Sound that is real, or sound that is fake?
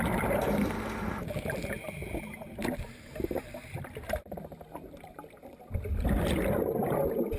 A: real